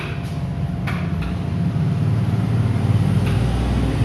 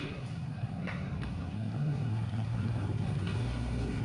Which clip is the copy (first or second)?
second